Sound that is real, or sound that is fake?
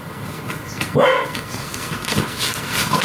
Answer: fake